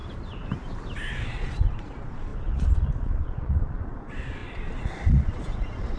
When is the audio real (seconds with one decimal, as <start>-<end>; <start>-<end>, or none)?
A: 0.0-1.1